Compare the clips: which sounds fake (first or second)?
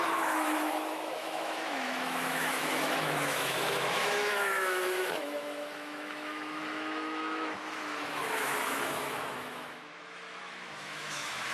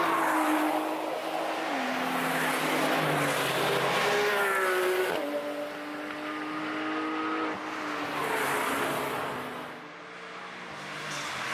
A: first